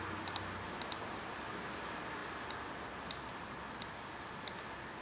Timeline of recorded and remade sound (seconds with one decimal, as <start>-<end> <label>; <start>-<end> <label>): 0.0-5.0 recorded